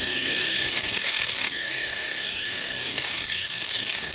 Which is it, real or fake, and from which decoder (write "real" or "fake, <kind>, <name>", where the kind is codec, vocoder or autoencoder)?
fake, codec, DAC